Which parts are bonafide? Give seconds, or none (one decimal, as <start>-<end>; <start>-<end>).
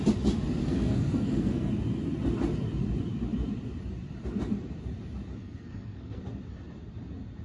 0.0-0.6; 1.7-5.4; 6.2-7.4